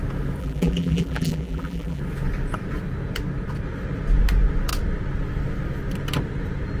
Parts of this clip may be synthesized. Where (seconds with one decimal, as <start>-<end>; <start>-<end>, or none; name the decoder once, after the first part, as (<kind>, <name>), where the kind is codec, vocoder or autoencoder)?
0.4-2.0 (vocoder, BigVGAN v2)